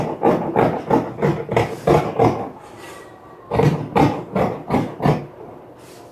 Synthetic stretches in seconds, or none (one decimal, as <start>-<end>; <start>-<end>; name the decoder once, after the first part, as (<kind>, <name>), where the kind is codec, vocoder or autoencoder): none